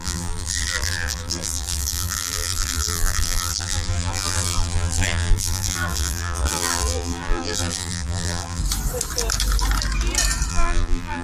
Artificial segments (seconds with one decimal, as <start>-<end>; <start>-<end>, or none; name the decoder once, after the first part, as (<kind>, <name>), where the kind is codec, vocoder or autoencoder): 0.0-8.6 (vocoder, BigVGAN v2); 10.5-11.2